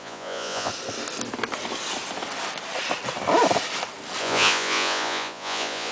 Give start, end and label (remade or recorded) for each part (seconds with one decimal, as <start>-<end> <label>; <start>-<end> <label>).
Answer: 0.0-0.7 remade; 0.7-4.2 recorded; 4.2-5.9 remade